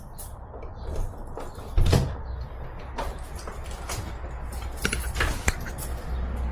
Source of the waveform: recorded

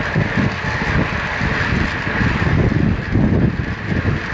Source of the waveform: recorded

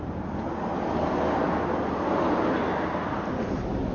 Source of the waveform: recorded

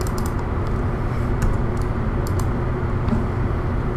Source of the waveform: recorded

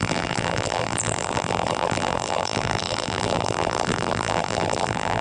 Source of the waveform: remade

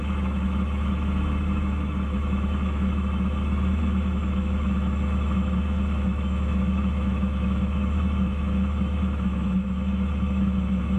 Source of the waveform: remade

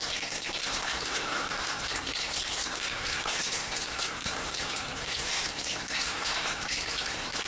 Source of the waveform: remade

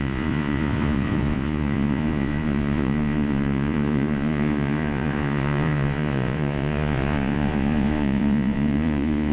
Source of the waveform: remade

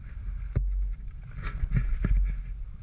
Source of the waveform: recorded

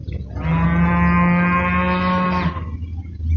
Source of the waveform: recorded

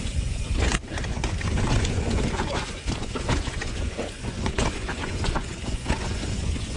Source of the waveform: remade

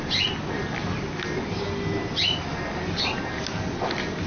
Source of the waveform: recorded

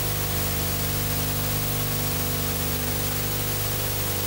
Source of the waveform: recorded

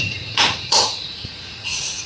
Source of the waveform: remade